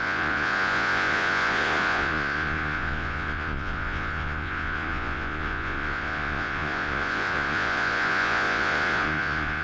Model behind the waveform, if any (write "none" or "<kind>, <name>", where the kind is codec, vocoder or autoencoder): vocoder, Vocos